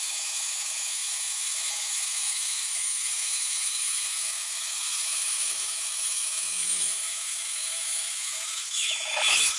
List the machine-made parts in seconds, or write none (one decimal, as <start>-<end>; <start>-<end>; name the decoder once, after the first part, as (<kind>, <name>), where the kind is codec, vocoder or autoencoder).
0.0-9.6 (autoencoder, DAC-VAE)